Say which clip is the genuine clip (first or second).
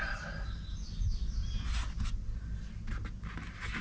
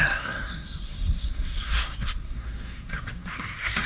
first